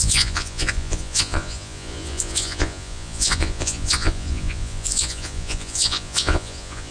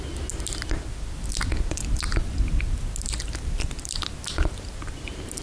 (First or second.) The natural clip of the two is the second